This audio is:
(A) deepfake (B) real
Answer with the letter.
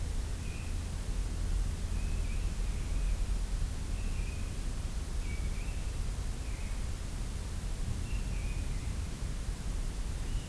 B